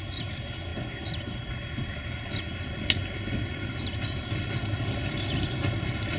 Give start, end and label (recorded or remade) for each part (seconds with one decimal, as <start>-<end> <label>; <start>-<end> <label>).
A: 0.0-0.7 recorded; 0.7-1.5 remade; 1.5-6.2 recorded

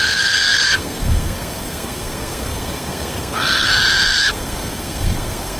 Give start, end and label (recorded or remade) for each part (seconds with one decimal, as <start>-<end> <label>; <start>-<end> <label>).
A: 0.0-3.7 remade; 3.7-4.3 recorded; 4.3-5.6 remade

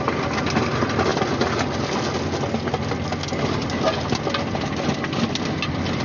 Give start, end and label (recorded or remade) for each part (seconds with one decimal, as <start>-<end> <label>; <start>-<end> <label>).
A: 0.0-6.0 recorded

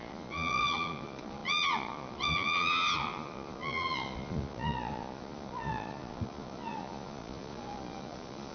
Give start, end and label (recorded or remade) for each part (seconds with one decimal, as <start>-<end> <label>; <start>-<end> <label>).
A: 0.0-8.5 remade